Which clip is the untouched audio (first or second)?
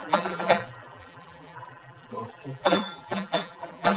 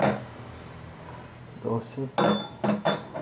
second